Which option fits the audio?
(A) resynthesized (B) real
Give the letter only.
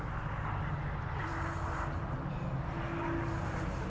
B